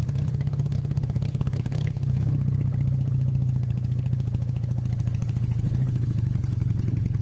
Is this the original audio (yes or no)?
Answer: no